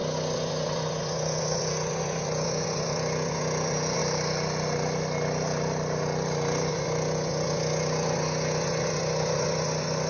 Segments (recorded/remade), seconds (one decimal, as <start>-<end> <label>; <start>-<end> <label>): 0.0-4.0 remade; 4.0-6.7 recorded; 6.7-10.1 remade